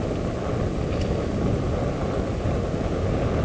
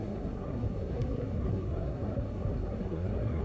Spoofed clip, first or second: second